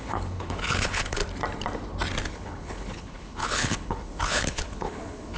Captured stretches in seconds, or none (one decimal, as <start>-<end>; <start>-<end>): 1.2-2.3